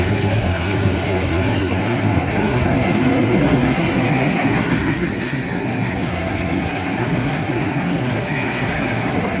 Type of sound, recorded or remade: remade